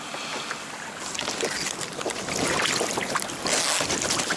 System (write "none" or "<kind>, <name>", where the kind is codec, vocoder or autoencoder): none